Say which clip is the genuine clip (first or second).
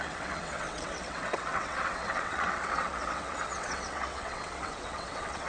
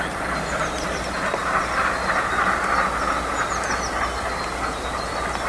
second